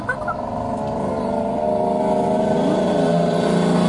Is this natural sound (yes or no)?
yes